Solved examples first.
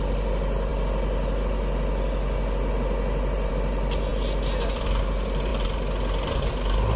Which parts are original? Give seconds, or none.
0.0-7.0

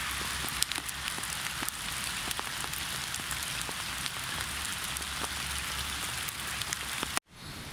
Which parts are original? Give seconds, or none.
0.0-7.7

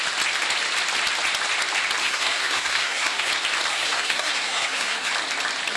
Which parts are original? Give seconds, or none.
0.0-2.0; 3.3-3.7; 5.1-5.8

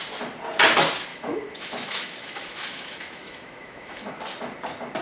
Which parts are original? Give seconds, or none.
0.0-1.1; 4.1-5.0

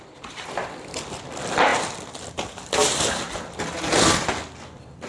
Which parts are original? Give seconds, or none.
0.0-5.1